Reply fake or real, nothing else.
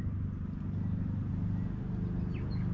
real